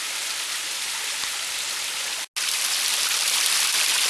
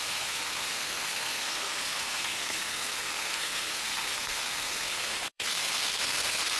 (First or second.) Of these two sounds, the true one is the first